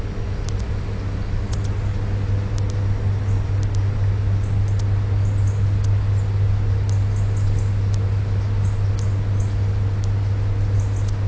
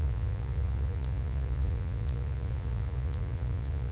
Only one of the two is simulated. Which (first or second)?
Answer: second